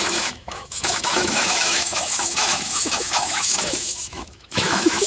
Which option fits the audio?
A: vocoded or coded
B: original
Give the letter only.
A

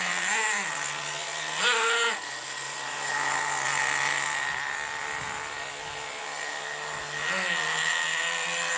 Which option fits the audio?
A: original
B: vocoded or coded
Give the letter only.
A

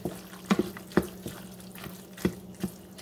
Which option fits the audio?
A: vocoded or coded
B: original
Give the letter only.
B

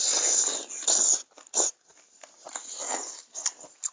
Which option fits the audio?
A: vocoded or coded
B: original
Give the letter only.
A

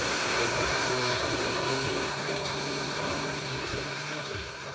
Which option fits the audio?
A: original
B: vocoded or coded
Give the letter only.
B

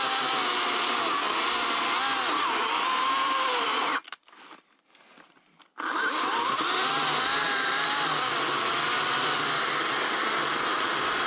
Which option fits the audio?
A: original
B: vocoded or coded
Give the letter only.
A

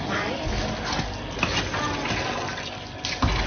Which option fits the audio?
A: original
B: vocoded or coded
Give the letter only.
A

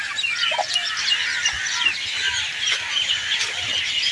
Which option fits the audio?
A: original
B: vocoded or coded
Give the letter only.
A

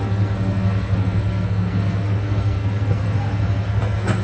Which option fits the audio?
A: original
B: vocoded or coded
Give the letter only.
B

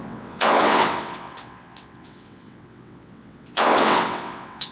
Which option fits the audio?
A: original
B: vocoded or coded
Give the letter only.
B